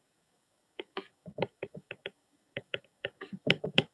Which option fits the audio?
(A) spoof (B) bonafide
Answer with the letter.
A